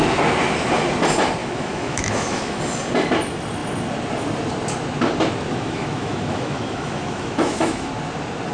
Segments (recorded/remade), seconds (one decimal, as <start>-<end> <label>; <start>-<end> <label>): 0.0-1.4 recorded; 1.4-2.6 remade; 2.6-5.5 recorded; 5.5-7.9 remade; 7.9-8.5 recorded